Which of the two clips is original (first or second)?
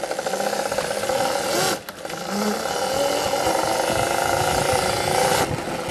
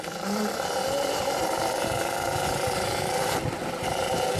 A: first